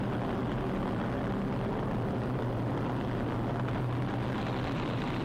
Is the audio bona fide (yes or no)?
yes